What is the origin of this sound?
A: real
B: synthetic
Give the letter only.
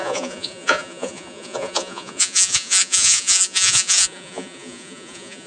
B